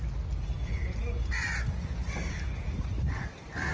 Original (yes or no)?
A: yes